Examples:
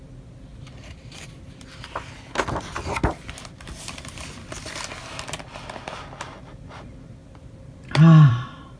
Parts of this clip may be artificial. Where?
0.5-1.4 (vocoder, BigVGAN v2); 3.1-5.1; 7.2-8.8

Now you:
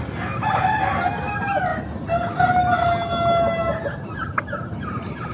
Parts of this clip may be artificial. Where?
none

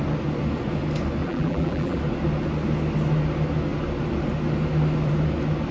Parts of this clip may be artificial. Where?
1.2-2.0 (vocoder, BigVGAN v2)

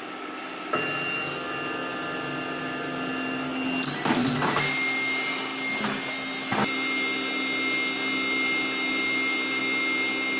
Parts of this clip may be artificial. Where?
none

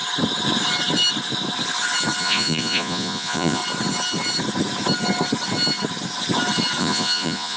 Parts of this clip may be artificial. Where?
2.2-3.6 (vocoder, Vocos); 6.8-7.6

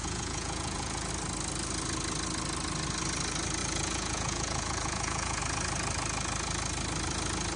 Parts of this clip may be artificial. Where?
0.0-1.1 (vocoder, Vocos); 3.6-5.4